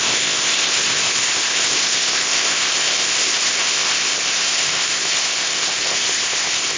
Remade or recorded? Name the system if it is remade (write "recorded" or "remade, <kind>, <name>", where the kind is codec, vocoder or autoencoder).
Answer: remade, codec, ZipCodec